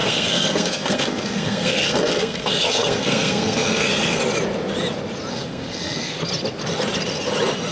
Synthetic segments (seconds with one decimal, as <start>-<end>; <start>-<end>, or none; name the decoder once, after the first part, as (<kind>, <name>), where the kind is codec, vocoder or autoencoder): 0.0-4.2 (codec, SNAC); 5.3-6.2